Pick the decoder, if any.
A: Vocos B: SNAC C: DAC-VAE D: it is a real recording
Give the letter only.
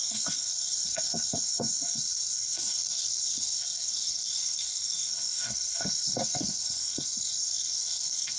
B